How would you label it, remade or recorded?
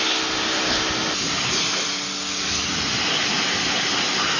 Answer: recorded